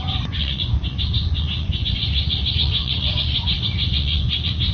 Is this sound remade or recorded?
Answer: remade